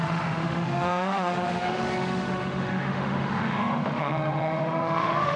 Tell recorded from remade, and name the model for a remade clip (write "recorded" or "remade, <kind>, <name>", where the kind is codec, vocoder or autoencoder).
remade, autoencoder, DAC-VAE